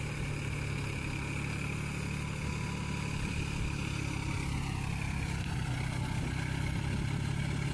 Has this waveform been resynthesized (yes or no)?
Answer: no